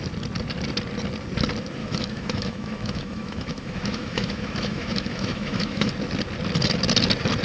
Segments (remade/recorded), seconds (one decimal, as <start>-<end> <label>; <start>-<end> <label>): 0.0-1.8 recorded; 1.8-5.9 remade; 5.9-7.4 recorded